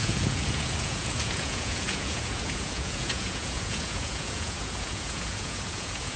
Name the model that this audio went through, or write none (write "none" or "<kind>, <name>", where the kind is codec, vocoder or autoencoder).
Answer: vocoder, Vocos